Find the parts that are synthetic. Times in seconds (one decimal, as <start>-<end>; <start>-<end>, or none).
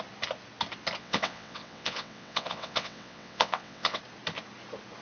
1.0-4.0